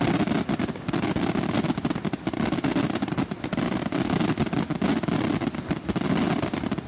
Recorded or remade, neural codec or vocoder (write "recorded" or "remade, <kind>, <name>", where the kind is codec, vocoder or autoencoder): recorded